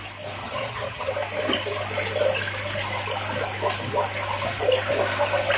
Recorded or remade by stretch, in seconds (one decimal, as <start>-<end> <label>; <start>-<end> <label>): 0.0-0.4 recorded; 0.4-1.1 remade; 1.1-5.6 recorded